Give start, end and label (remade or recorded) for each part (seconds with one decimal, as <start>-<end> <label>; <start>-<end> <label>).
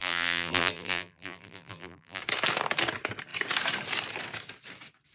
0.0-2.2 remade; 2.2-5.1 recorded